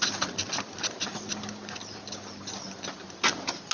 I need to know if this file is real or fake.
real